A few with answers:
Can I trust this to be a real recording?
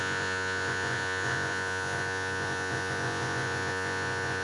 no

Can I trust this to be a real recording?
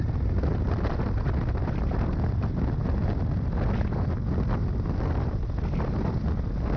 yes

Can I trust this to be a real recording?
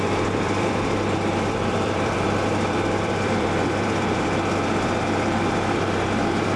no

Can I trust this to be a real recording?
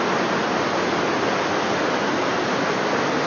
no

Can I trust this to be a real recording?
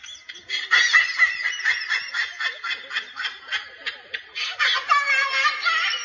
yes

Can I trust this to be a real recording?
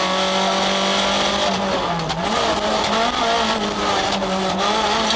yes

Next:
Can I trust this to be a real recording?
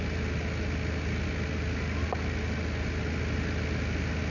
yes